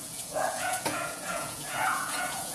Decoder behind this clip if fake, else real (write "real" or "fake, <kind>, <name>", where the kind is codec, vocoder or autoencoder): fake, vocoder, Vocos